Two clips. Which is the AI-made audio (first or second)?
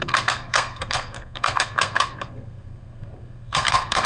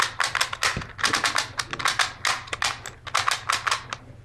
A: first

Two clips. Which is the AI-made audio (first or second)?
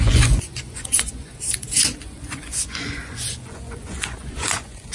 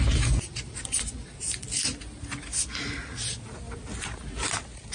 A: first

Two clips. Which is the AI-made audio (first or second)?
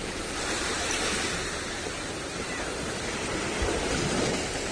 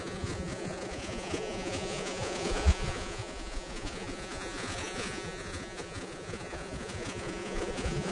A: second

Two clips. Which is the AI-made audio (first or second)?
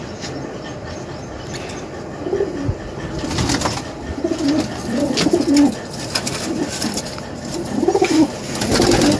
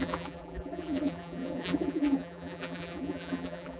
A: second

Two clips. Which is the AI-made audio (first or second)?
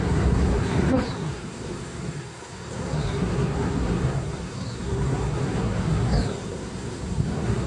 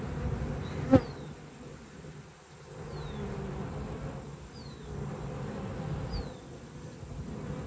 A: first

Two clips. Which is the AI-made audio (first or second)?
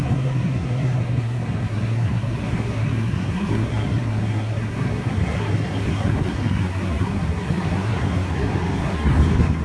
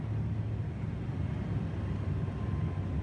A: first